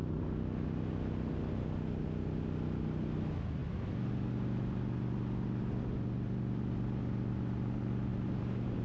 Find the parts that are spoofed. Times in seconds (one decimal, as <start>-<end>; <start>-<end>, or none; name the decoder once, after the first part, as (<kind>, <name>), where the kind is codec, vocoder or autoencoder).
none